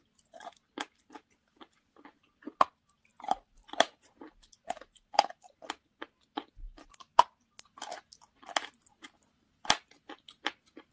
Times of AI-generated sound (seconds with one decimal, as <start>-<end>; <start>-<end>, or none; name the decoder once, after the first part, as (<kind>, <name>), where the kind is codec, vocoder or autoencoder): 3.1-4.1 (vocoder, BigVGAN v2)